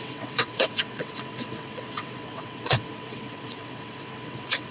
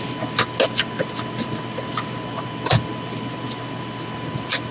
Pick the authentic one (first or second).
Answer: second